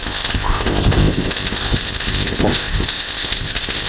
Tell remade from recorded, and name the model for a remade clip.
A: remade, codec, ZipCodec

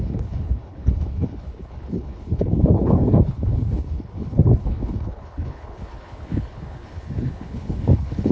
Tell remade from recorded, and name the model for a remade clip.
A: remade, codec, HILCodec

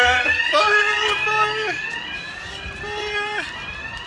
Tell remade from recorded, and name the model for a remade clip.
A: recorded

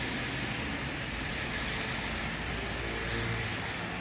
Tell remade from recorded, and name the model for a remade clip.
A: recorded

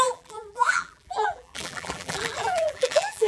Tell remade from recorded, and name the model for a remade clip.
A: remade, vocoder, BigVGAN v2